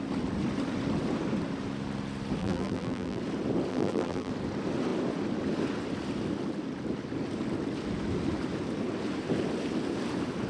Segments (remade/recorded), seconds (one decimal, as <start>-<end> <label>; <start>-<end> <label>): 0.0-2.4 recorded; 2.4-3.2 remade; 3.2-3.7 recorded; 3.7-4.3 remade; 4.3-10.5 recorded